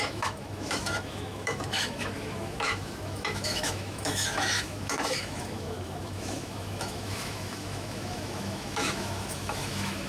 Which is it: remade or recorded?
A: remade